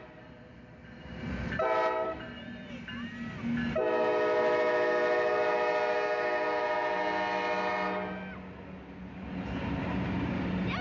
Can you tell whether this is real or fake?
real